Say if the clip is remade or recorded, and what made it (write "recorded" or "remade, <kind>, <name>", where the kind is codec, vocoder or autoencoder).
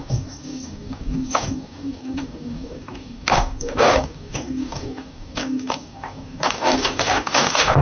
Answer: remade, codec, DAC